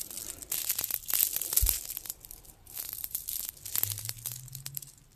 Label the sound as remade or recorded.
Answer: recorded